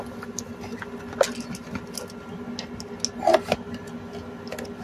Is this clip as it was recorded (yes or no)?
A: yes